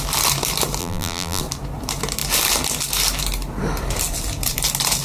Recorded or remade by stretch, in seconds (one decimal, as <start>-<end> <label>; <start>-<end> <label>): 0.0-0.8 recorded; 0.8-1.4 remade; 1.4-5.0 recorded